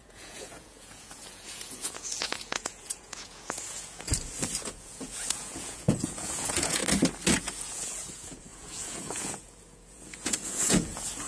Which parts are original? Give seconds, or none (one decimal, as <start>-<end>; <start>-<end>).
4.1-4.6; 6.8-7.4